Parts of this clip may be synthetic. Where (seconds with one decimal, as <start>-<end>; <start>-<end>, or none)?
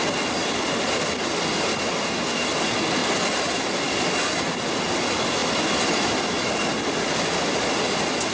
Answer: none